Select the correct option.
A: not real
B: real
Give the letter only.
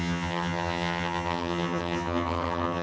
A